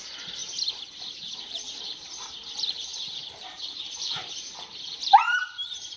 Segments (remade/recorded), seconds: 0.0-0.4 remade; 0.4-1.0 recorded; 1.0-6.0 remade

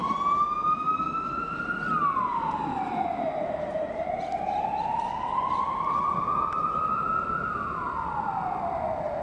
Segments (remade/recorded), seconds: 0.0-9.2 recorded

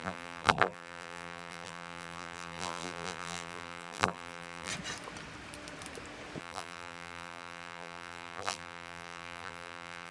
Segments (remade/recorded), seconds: 0.0-4.7 remade; 4.7-6.4 recorded; 6.4-10.1 remade

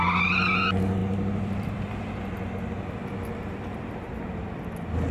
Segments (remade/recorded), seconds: 0.0-1.0 recorded; 1.0-2.5 remade; 2.5-5.1 recorded

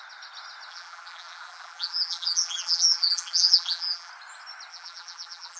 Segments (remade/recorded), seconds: 0.0-0.7 recorded; 0.7-4.1 remade; 4.1-4.7 recorded; 4.7-5.6 remade